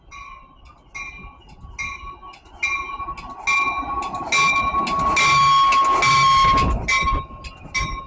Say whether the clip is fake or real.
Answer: real